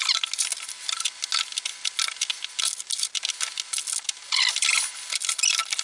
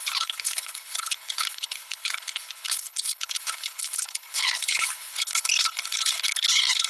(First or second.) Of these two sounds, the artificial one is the second